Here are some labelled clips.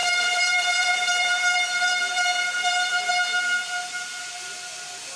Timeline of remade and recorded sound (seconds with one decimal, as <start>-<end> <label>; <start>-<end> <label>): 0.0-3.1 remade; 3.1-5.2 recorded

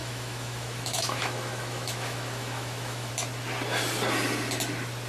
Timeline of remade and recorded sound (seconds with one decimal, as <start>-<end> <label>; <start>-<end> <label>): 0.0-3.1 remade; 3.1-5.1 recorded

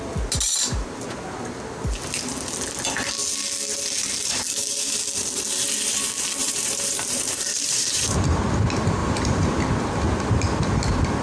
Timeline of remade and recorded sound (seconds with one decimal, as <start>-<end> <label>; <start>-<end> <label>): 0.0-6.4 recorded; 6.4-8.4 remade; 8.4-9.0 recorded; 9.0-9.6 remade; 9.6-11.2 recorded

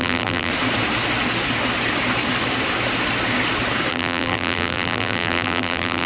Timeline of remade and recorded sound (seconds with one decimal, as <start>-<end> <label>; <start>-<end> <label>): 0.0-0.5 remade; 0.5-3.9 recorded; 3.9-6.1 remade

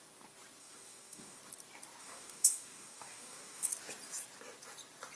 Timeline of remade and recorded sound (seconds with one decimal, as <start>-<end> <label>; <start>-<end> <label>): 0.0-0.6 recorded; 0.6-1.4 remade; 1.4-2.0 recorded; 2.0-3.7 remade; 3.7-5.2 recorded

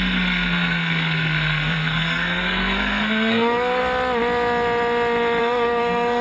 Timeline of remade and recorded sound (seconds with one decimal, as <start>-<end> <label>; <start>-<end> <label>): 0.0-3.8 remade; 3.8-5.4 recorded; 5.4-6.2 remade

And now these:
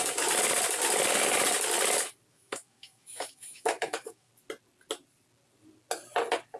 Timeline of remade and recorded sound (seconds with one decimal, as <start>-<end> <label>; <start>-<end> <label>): 0.0-2.3 recorded; 2.3-4.3 remade; 4.3-6.6 recorded

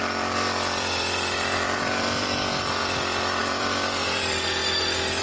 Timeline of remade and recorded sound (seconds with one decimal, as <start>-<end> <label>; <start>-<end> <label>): 0.0-2.8 remade; 2.8-3.4 recorded; 3.4-4.6 remade; 4.6-5.2 recorded